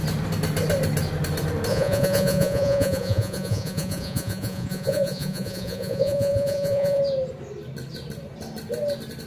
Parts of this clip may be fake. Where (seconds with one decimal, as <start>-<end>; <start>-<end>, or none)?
1.7-7.0